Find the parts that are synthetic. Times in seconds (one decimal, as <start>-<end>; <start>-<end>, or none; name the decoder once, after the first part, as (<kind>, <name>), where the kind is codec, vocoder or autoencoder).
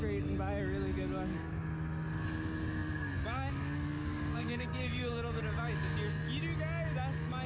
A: 4.0-5.4 (codec, DAC)